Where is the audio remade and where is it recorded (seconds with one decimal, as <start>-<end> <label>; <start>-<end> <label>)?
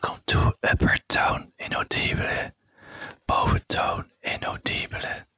0.0-5.4 recorded